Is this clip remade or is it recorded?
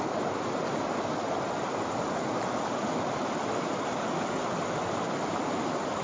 recorded